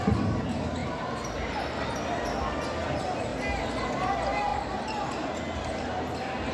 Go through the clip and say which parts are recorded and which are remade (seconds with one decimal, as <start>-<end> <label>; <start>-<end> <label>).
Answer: 0.0-0.8 recorded; 0.8-2.2 remade; 2.2-4.5 recorded; 4.5-5.1 remade; 5.1-6.5 recorded